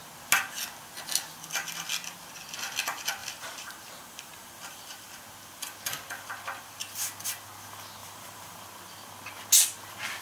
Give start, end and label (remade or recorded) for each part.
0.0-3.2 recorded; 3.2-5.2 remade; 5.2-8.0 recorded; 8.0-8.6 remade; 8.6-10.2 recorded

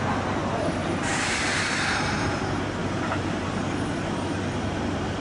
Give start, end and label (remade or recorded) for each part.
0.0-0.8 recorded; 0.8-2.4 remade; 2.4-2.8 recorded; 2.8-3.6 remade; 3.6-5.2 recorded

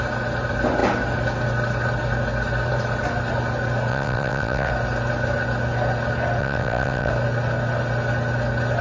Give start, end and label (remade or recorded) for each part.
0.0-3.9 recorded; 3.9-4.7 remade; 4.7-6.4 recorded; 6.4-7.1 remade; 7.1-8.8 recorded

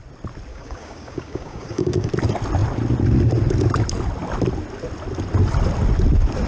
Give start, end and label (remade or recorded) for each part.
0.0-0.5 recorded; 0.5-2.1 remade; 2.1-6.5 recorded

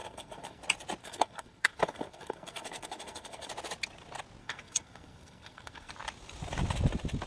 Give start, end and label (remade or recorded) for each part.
0.0-0.6 remade; 0.6-1.0 recorded; 1.0-3.5 remade; 3.5-4.4 recorded; 4.4-5.9 remade; 5.9-7.3 recorded

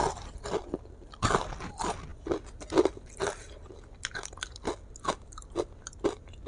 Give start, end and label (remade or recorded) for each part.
0.0-6.5 recorded

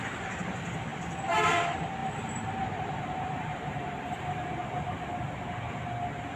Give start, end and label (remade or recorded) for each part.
0.0-2.0 recorded; 2.0-4.3 remade; 4.3-6.4 recorded